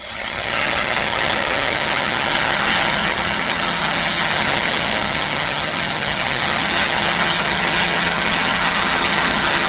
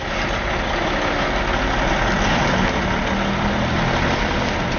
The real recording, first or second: second